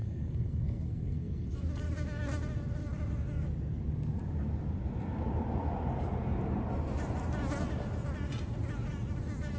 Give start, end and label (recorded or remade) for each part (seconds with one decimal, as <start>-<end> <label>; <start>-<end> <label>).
0.0-1.5 remade; 1.5-9.6 recorded